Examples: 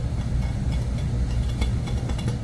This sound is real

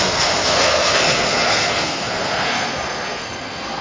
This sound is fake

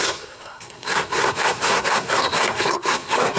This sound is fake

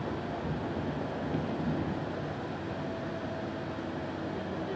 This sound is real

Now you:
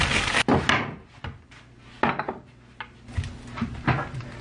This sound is real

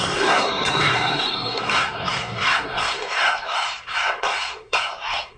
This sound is fake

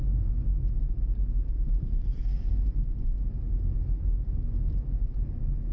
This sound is real